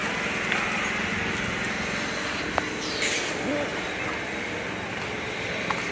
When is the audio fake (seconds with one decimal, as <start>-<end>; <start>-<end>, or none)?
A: none